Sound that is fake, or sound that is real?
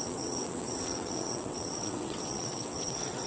fake